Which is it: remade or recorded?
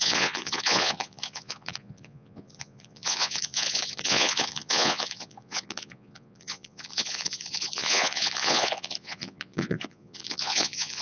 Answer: remade